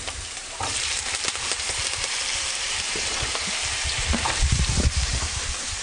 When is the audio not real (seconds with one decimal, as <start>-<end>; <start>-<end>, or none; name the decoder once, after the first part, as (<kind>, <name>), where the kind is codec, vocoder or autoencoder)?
0.0-5.8 (vocoder, BigVGAN v2)